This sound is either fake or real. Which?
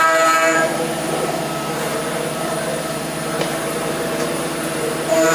fake